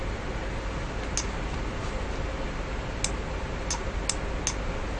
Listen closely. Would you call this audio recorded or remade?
recorded